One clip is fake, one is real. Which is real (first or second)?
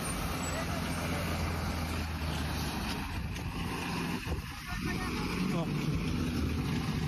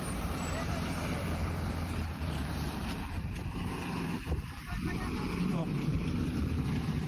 first